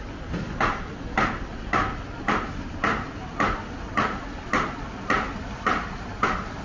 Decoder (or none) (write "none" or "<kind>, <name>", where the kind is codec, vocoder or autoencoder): none